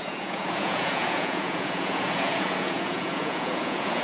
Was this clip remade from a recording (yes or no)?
yes